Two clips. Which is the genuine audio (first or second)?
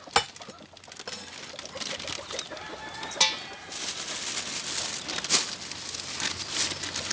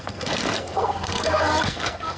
first